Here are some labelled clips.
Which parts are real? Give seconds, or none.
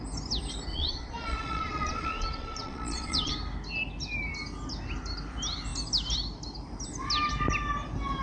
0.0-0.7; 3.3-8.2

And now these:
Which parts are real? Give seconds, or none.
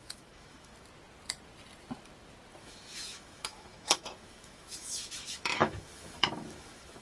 0.7-2.6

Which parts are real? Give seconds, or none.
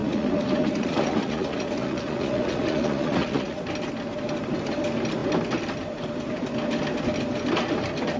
3.6-8.2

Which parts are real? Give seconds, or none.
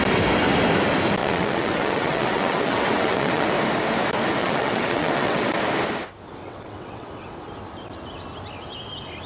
0.0-1.2; 3.5-4.4; 5.5-6.4; 7.1-9.3